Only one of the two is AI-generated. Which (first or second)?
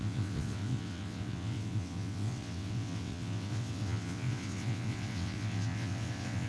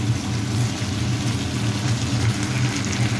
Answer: first